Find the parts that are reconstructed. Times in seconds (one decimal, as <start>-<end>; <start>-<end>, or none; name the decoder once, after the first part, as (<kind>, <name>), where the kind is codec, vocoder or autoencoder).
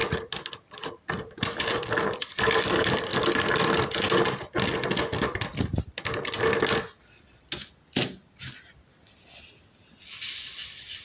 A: none